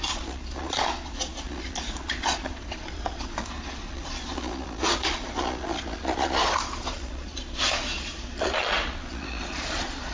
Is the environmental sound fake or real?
fake